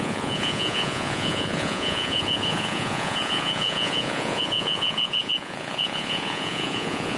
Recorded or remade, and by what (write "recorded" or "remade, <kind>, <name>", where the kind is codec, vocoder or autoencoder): remade, vocoder, Vocos